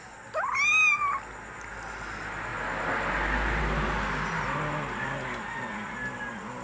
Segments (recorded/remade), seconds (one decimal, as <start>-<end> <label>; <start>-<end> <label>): 0.0-6.6 recorded